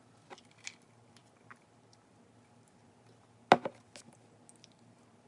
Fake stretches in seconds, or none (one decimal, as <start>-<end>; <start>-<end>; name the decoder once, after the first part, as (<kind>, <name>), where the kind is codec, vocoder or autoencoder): none